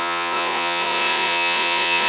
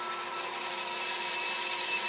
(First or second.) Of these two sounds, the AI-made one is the first